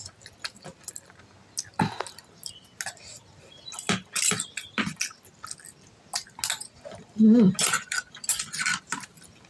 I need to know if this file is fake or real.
real